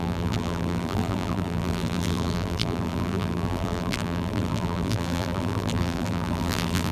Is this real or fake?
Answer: fake